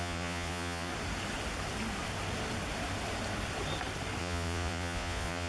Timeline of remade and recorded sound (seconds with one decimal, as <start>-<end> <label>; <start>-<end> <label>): 0.0-0.9 remade; 0.9-4.2 recorded; 4.2-5.5 remade

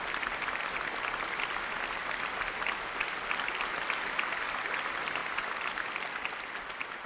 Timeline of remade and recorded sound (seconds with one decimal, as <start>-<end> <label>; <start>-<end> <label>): 0.0-7.1 recorded

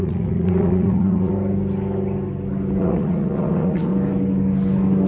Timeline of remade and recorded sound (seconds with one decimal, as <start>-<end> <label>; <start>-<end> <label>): 0.0-1.3 remade; 1.3-2.8 recorded; 2.8-3.9 remade; 3.9-5.1 recorded

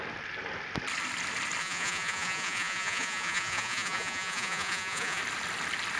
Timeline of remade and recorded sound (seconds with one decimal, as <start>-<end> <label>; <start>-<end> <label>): 0.0-1.6 recorded; 1.6-5.2 remade; 5.2-6.0 recorded

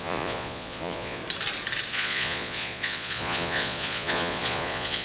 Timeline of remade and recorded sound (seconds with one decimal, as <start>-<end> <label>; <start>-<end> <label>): 0.0-1.2 remade; 1.2-1.9 recorded; 1.9-5.0 remade